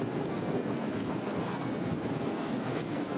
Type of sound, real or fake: fake